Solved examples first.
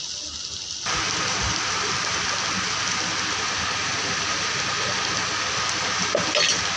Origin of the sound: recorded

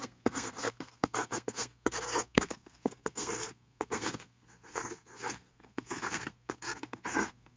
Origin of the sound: remade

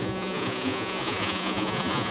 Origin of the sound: remade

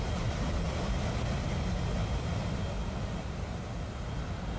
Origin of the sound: recorded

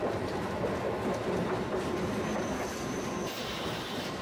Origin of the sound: recorded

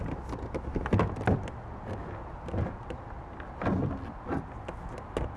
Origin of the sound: recorded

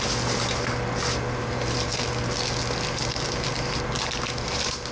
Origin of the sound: recorded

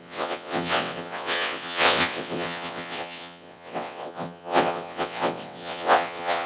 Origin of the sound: remade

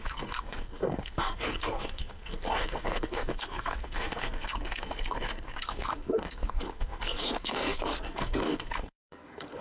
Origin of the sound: remade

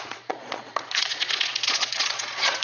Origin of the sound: remade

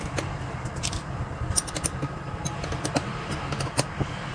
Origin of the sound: recorded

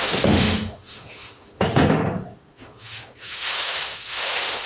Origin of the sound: remade